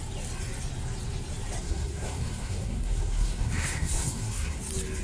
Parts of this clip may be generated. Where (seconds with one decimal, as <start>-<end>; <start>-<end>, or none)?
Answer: 1.6-4.6